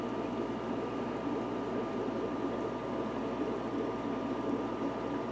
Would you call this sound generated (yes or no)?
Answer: no